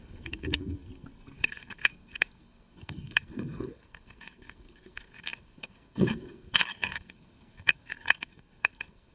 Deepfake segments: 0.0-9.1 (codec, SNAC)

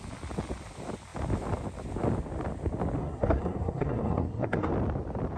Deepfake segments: 3.0-4.7 (codec, SNAC)

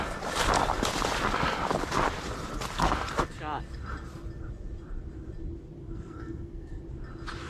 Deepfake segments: 5.8-6.8 (codec, SNAC)

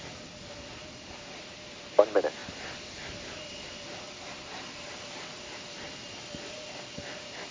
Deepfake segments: none

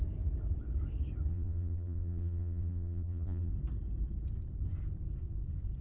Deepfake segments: 1.3-3.5 (vocoder, BigVGAN v2)